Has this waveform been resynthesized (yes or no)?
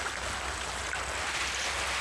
no